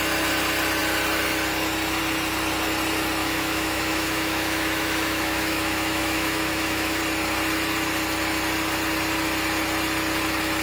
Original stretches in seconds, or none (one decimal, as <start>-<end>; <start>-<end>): 0.0-3.2; 7.0-10.6